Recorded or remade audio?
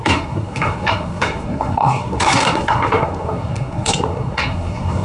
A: remade